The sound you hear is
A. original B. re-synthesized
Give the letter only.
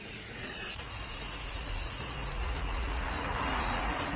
B